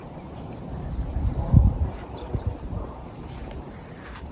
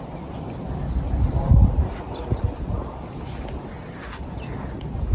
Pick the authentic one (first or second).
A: second